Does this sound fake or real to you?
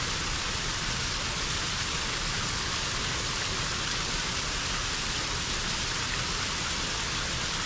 real